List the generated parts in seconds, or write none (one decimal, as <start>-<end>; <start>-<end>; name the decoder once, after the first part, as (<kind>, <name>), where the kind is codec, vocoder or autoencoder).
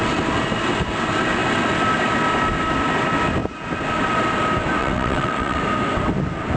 4.8-5.6 (vocoder, WaveNeXt)